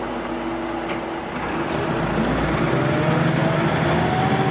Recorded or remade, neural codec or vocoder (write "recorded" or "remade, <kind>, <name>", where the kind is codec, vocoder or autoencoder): recorded